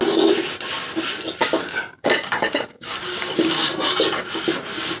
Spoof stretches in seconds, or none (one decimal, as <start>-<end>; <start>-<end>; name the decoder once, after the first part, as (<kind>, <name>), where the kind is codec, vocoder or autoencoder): 1.4-3.7 (codec, DAC)